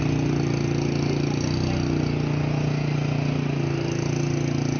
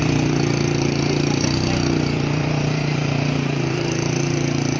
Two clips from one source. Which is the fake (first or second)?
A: second